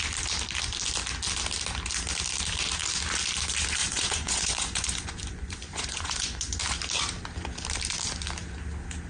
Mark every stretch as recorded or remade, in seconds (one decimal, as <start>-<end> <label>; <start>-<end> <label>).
0.0-3.8 recorded; 3.8-6.6 remade; 6.6-9.1 recorded